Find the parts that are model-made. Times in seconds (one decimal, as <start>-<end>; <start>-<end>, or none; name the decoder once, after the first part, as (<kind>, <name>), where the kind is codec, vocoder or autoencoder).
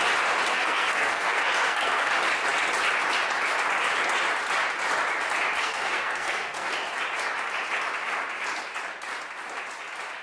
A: 0.5-2.1 (codec, SNAC); 5.6-6.7